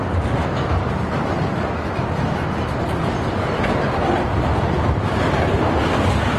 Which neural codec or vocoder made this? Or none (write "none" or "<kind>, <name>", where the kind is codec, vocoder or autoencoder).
none